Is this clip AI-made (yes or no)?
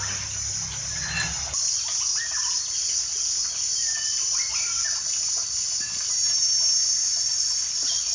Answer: no